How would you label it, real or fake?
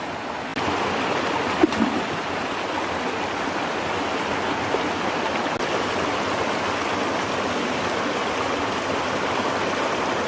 real